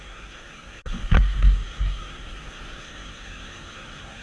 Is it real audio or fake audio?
fake